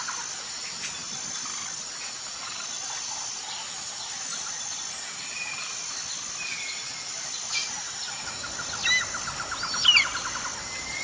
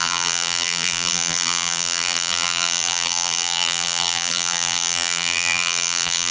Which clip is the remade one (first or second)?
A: second